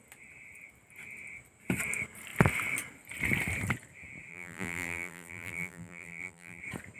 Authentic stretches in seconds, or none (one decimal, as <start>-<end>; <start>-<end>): 0.0-4.3; 6.6-7.0